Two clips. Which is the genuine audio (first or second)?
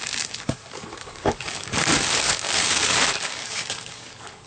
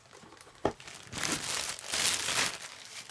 second